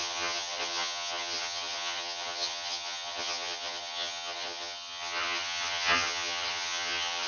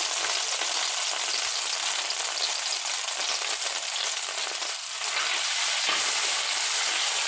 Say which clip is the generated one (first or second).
first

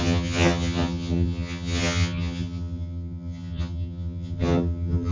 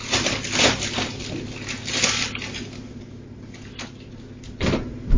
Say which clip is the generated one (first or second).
first